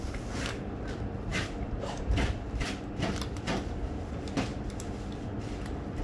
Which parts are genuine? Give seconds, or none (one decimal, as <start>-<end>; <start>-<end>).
0.0-6.0